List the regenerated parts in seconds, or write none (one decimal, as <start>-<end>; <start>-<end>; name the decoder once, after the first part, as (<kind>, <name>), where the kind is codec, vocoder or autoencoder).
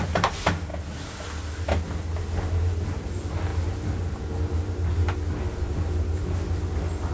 none